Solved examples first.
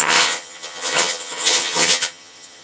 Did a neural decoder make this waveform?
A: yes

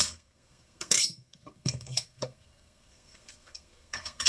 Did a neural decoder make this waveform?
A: yes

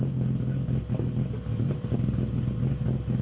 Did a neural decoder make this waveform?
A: no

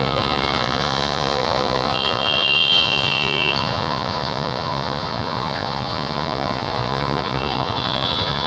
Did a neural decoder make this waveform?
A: yes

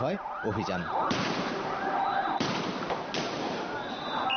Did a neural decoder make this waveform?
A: no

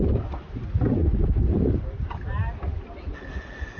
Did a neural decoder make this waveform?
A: no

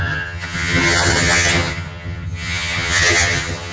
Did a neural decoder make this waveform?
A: yes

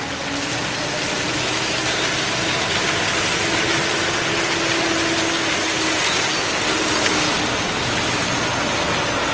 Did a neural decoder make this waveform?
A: no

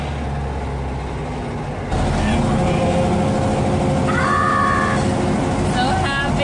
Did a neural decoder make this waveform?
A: no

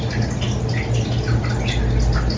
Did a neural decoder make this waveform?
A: no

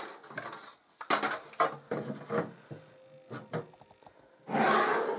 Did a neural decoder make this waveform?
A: no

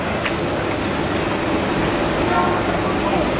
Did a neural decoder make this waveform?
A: no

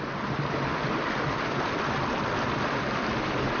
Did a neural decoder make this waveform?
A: no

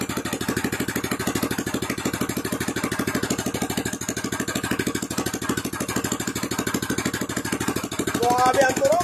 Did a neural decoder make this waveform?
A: no